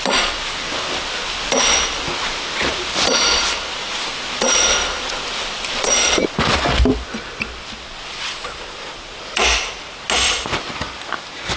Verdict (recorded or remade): recorded